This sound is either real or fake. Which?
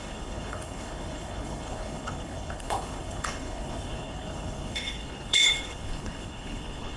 fake